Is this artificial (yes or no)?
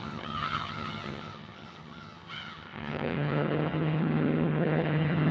yes